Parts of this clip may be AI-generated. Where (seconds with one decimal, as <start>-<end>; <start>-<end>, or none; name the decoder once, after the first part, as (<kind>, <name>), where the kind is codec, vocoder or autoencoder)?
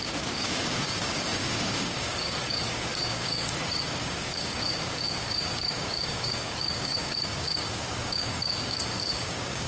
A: 0.0-9.7 (codec, DAC)